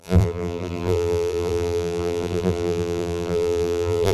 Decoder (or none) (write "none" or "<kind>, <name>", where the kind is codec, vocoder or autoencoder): vocoder, BigVGAN v2